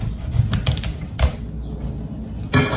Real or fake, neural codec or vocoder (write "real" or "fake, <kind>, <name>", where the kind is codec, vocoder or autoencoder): real